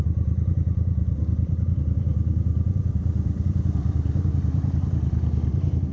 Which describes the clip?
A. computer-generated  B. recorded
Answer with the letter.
A